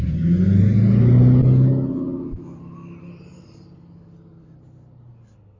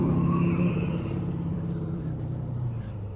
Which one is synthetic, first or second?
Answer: second